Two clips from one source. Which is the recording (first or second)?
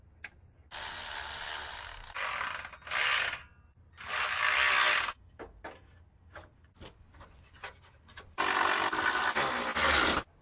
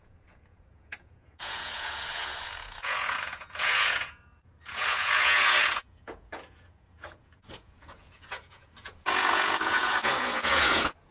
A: first